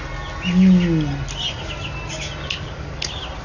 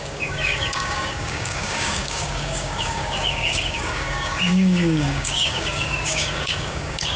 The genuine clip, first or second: first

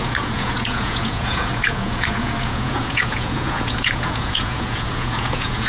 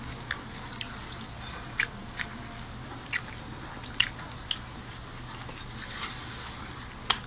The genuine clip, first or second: second